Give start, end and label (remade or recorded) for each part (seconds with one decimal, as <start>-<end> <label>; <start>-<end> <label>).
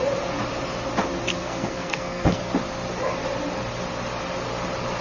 0.0-1.3 recorded; 1.3-2.5 remade; 2.5-5.0 recorded